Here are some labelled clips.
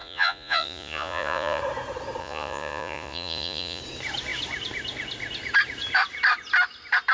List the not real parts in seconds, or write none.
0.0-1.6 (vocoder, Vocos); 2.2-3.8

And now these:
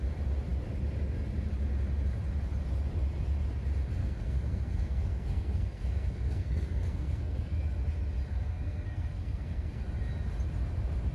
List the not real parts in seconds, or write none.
4.0-7.5 (codec, SNAC); 8.3-9.8